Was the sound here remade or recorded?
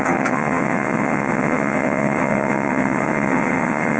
remade